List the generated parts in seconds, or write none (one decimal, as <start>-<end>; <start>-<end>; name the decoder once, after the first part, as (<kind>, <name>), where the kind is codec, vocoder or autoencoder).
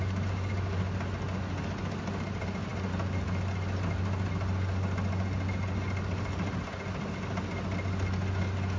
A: none